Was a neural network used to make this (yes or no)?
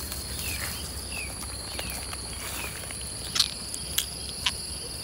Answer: no